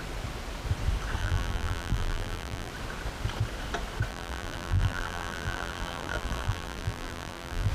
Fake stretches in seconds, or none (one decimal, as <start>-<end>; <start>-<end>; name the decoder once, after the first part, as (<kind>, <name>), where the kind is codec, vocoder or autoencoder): 1.2-2.7 (vocoder, BigVGAN v2); 4.1-7.7